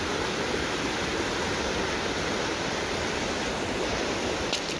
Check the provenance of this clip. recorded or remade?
recorded